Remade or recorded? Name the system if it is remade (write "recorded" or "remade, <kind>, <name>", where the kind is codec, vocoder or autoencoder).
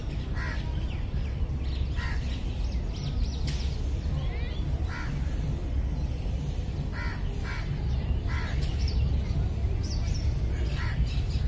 recorded